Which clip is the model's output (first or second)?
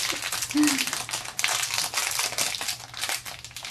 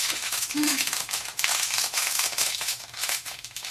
second